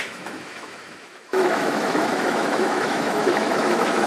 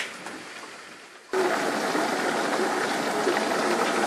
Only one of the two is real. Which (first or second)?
second